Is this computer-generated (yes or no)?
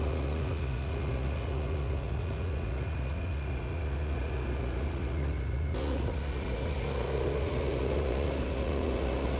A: yes